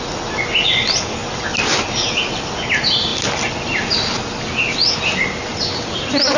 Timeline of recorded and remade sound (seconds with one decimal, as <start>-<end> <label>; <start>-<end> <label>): 0.0-6.4 recorded